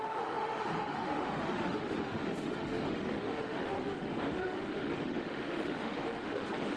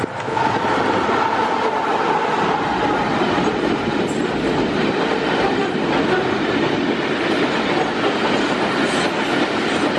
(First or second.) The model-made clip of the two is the first